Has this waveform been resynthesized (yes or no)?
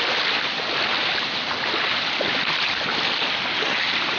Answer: no